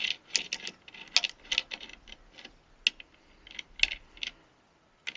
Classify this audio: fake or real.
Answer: real